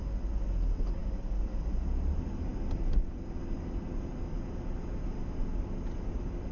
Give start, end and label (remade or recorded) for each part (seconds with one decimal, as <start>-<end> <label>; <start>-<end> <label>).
0.0-6.5 recorded